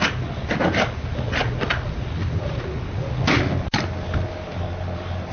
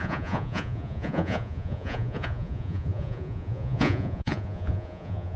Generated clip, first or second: second